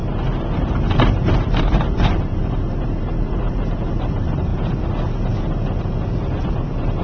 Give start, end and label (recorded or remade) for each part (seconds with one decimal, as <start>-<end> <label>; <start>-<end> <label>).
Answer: 0.0-1.6 recorded; 1.6-4.5 remade; 4.5-6.5 recorded; 6.5-7.0 remade